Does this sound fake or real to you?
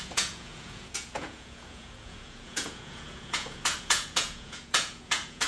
fake